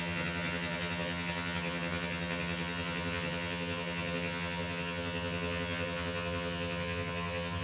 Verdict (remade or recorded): remade